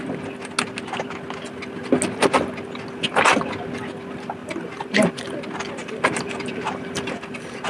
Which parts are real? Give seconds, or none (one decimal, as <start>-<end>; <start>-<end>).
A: 0.0-4.4; 5.2-5.8